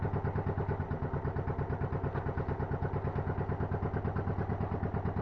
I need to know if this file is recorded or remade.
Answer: recorded